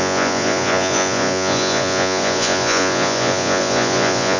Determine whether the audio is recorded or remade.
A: remade